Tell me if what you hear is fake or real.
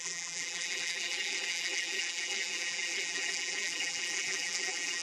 fake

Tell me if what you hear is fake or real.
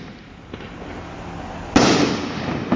real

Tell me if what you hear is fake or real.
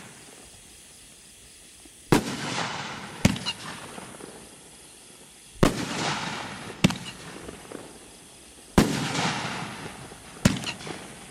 real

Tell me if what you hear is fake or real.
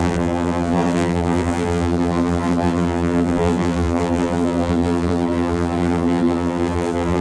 fake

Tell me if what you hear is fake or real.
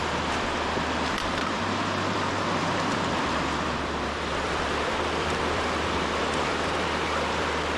fake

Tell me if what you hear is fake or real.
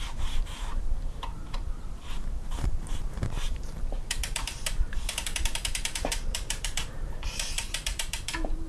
fake